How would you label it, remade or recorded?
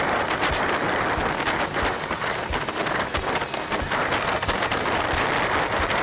recorded